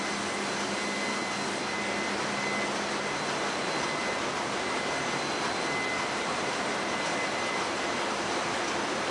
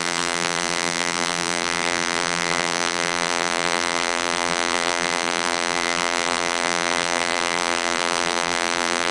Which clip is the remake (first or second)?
second